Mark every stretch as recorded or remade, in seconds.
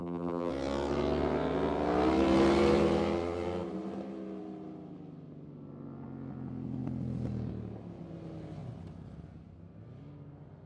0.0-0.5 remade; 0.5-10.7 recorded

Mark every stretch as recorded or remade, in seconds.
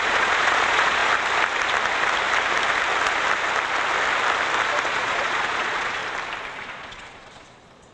0.0-1.0 remade; 1.0-4.8 recorded; 4.8-6.0 remade; 6.0-6.6 recorded; 6.6-7.9 remade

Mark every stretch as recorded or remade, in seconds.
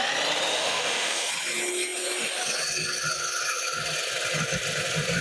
0.0-0.5 recorded; 0.5-1.3 remade; 1.3-5.2 recorded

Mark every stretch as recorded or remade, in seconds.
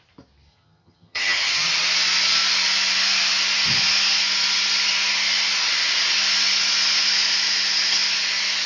0.0-0.5 recorded; 0.5-1.7 remade; 1.7-8.7 recorded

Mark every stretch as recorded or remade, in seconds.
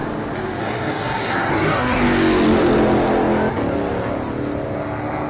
0.0-0.6 recorded; 0.6-2.0 remade; 2.0-5.3 recorded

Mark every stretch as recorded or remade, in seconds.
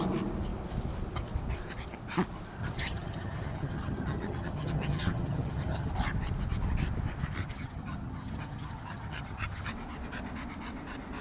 0.0-2.6 recorded; 2.6-5.9 remade; 5.9-7.4 recorded; 7.4-9.7 remade; 9.7-11.2 recorded